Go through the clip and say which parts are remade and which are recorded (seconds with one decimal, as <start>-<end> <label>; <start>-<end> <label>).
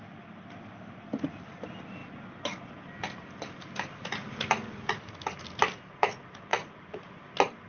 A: 0.0-6.5 recorded; 6.5-7.1 remade; 7.1-7.7 recorded